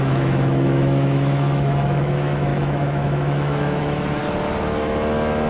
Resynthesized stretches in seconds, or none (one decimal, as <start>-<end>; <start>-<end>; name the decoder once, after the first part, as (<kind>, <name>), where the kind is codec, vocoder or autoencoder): 0.0-4.2 (autoencoder, DAC-VAE)